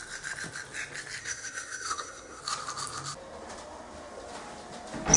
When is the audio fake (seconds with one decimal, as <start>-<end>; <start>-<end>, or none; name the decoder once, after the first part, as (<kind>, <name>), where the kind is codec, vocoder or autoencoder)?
1.2-2.4 (codec, SNAC)